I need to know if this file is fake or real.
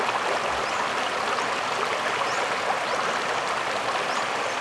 real